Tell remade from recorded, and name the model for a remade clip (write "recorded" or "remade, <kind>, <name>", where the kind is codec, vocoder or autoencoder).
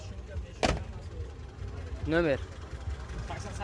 recorded